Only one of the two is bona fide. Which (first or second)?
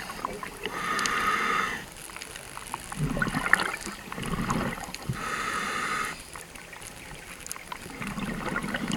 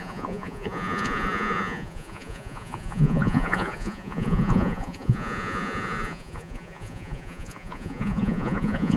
first